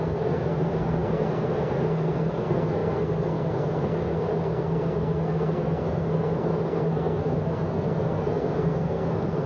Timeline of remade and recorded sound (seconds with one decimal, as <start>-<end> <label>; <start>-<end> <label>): 0.0-9.5 remade